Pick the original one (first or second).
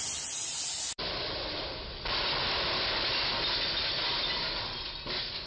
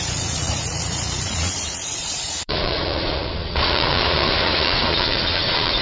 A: first